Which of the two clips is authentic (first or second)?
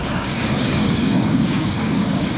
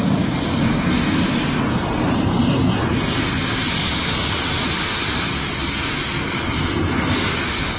second